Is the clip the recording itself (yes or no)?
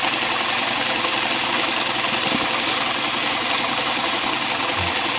yes